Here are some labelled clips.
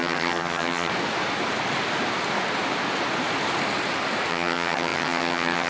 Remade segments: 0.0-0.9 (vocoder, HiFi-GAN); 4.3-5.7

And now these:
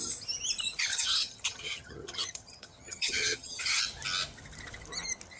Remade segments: 0.9-3.8 (vocoder, HiFi-GAN)

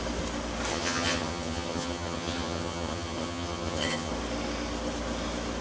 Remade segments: 0.7-4.1 (vocoder, HiFi-GAN)

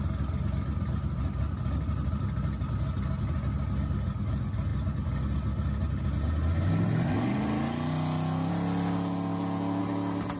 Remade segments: none